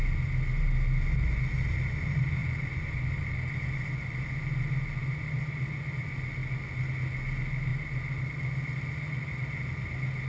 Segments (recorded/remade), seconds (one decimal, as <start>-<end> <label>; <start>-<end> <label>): 0.0-10.3 recorded